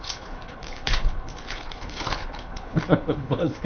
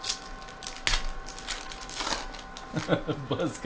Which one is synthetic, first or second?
first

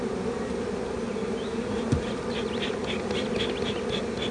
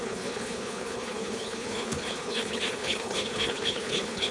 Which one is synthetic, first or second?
second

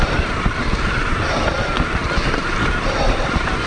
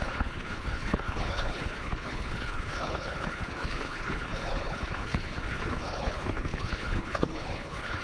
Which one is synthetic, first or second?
second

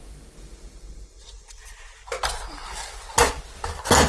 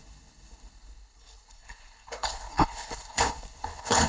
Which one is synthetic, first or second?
second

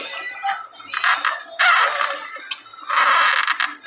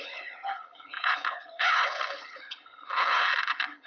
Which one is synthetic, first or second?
second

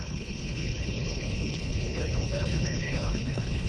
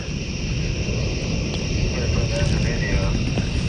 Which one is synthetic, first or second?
first